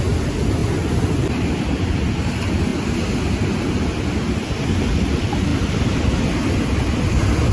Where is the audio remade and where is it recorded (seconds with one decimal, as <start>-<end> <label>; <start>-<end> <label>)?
0.0-2.7 remade; 2.7-4.1 recorded; 4.1-7.5 remade